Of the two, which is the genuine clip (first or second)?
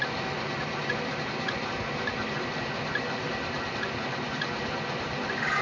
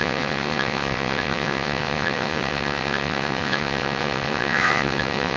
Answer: first